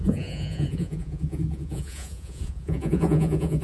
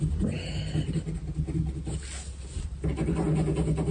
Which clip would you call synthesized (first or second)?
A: first